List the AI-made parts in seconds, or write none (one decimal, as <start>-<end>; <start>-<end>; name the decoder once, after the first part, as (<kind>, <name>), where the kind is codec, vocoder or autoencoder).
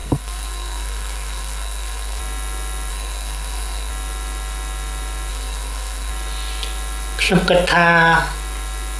0.0-2.2 (codec, SNAC); 2.9-3.9; 5.3-6.1